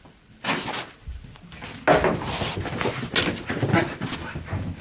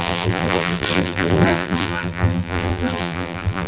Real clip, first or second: first